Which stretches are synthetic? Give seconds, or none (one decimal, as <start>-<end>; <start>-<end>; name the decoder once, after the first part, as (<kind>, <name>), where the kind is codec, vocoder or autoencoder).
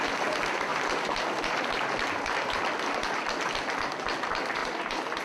4.6-5.2 (vocoder, BigVGAN v2)